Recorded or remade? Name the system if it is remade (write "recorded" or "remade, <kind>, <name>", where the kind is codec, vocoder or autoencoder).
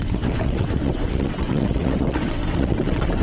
remade, vocoder, WaveNeXt